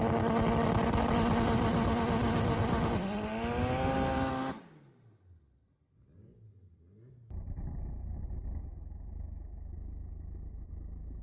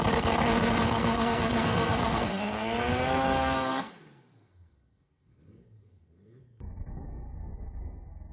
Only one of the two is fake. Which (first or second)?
second